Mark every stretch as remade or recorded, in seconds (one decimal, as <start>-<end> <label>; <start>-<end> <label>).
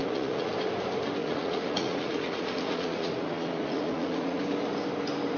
0.0-0.5 remade; 0.5-1.2 recorded; 1.2-4.4 remade; 4.4-5.4 recorded